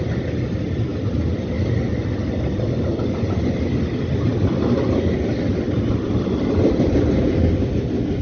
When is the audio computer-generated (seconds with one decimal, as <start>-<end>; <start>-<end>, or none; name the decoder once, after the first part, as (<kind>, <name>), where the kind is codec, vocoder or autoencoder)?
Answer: none